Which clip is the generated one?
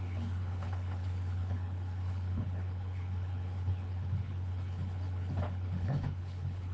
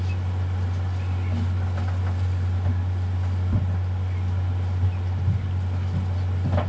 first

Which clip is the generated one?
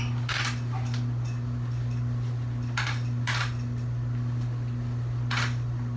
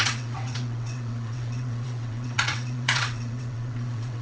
second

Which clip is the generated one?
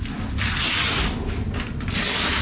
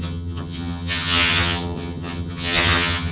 second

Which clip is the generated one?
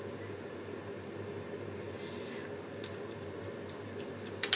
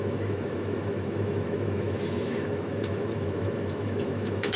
second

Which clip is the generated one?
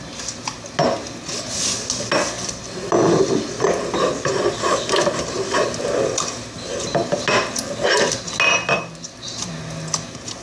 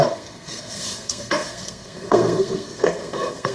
second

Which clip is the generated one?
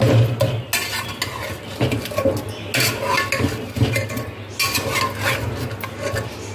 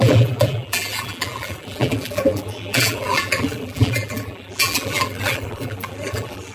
second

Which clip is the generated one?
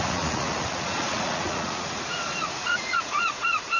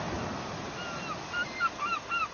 first